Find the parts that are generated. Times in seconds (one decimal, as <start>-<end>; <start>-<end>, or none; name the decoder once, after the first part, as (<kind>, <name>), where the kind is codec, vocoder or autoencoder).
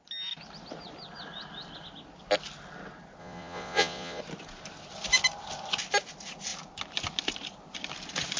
3.2-4.2 (vocoder, Vocos)